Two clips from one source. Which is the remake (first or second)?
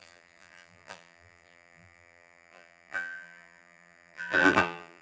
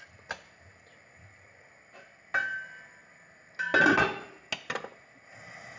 first